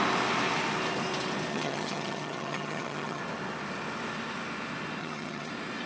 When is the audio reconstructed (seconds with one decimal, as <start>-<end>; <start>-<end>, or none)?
1.5-3.2; 5.0-5.5